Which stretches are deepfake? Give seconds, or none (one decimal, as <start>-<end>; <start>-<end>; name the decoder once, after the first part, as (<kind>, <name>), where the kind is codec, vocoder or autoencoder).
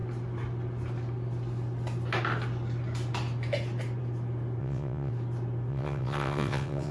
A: 4.6-5.1 (vocoder, WaveNeXt); 5.7-6.9